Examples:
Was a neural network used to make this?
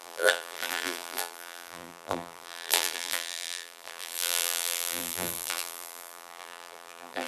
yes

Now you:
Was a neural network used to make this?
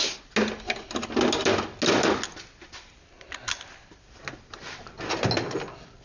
no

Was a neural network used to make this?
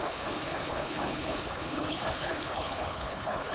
yes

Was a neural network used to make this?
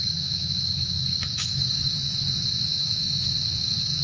yes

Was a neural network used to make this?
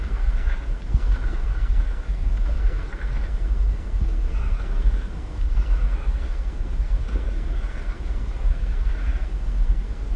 yes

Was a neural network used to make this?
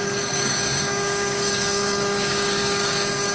yes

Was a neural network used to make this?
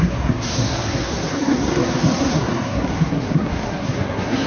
yes